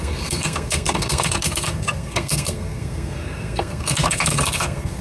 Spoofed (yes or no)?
yes